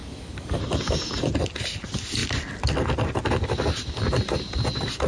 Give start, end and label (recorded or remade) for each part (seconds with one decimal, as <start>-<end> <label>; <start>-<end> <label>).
0.0-0.6 remade; 0.6-5.1 recorded